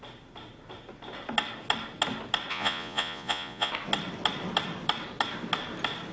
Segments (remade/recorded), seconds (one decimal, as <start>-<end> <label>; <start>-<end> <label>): 0.0-2.5 recorded; 2.5-3.7 remade; 3.7-6.1 recorded